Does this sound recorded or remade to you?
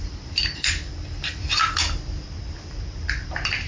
remade